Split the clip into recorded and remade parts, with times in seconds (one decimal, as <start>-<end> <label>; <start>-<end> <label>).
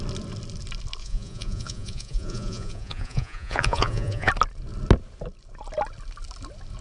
0.0-1.0 recorded; 1.0-4.3 remade; 4.3-6.8 recorded